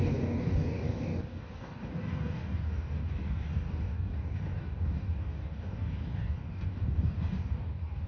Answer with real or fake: fake